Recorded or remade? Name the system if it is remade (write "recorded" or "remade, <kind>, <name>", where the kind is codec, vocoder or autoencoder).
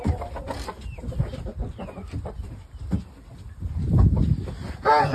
recorded